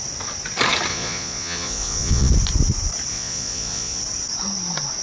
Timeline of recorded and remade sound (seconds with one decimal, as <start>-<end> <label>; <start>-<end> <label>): 0.0-0.9 recorded; 0.9-2.3 remade; 2.3-3.1 recorded; 3.1-4.0 remade; 4.0-5.0 recorded